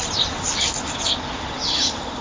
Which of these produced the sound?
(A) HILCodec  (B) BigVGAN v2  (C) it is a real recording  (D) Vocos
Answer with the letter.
C